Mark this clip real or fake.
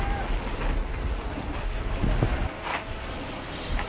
real